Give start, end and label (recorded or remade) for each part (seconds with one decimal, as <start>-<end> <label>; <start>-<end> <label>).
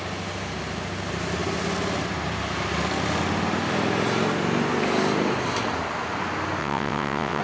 0.0-6.6 recorded; 6.6-7.4 remade